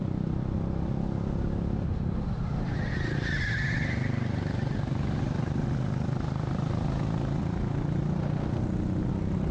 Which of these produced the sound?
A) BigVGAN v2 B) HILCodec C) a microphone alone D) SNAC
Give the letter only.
C